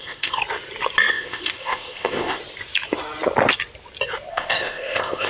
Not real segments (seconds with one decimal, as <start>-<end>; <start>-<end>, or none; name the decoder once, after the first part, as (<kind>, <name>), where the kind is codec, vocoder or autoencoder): 0.0-0.4 (codec, ZipCodec); 1.1-2.4; 4.3-5.3

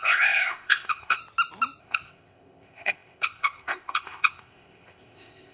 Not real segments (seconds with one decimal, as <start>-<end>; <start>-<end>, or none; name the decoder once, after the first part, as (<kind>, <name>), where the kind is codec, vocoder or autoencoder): 0.0-1.2 (codec, ZipCodec); 1.8-5.5

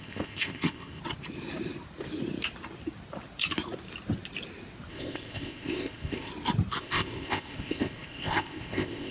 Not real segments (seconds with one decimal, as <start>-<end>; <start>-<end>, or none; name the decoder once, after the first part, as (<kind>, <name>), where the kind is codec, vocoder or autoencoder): 0.0-1.0 (codec, ZipCodec); 4.9-6.3; 6.8-9.1

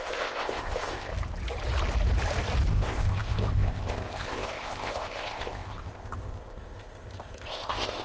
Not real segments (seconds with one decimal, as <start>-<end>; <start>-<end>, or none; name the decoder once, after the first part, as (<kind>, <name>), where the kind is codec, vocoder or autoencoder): 0.0-1.1 (codec, ZipCodec); 2.7-8.0

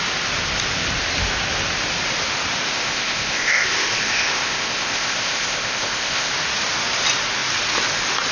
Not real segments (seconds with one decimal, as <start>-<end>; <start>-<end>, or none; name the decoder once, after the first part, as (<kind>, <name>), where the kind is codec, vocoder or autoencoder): 2.7-6.3 (codec, ZipCodec)

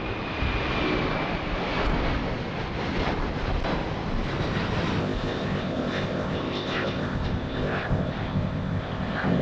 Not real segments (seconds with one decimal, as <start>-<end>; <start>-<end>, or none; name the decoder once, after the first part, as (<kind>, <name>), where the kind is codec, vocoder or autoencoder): 5.0-9.4 (codec, ZipCodec)

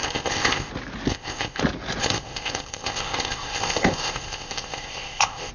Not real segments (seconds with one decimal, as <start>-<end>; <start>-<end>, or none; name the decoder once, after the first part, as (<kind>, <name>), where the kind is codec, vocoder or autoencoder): 0.0-0.7 (codec, ZipCodec); 1.1-1.6; 2.0-5.5

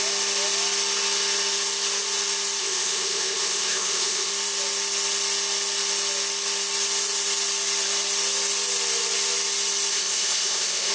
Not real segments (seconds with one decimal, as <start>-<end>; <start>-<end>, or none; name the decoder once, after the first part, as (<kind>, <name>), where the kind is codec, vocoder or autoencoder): 2.6-4.3 (codec, ZipCodec); 9.9-10.9